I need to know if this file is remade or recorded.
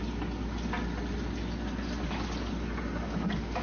recorded